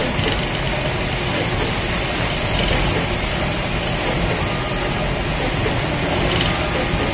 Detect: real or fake real